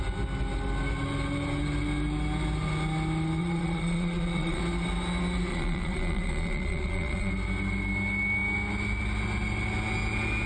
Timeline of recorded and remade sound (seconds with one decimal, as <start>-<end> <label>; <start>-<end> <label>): 0.0-3.4 recorded; 3.4-4.6 remade; 4.6-5.5 recorded; 5.5-7.3 remade; 7.3-10.5 recorded